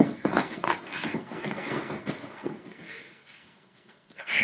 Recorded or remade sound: remade